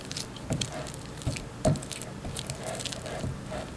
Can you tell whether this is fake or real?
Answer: fake